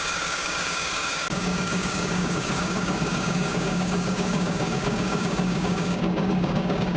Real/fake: fake